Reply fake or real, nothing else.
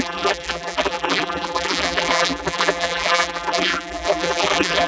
fake